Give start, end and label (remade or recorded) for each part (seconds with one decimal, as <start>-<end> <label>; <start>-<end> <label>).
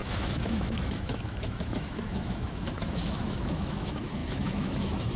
0.0-5.2 remade